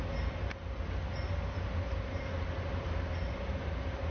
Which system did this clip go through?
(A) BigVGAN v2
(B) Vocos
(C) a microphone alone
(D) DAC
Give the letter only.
C